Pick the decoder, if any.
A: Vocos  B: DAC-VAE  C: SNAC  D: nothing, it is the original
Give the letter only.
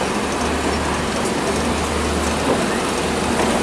D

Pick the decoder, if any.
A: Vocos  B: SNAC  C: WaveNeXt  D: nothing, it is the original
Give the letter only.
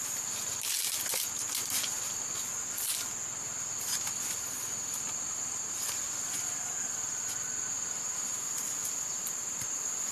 D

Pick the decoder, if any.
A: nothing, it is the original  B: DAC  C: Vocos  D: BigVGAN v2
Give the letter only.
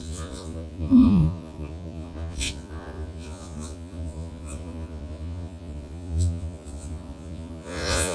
C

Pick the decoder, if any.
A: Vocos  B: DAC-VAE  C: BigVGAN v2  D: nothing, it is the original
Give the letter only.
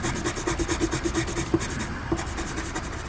D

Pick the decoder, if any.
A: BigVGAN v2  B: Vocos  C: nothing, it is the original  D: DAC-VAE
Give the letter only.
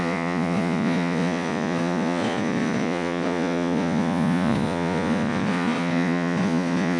B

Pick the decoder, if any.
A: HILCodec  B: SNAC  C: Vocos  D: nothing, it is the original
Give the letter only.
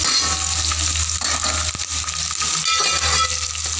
D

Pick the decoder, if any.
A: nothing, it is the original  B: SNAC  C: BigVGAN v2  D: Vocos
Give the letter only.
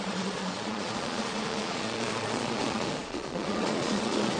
D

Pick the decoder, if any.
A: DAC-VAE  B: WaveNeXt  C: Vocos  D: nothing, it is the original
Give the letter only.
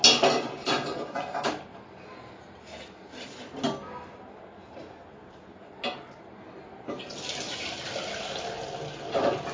D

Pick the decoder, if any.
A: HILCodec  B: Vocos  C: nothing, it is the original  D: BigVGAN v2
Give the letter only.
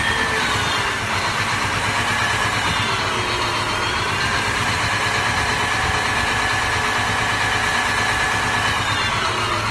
C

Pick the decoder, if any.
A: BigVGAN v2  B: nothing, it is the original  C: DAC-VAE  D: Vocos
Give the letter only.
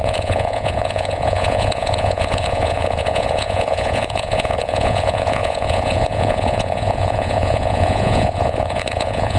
D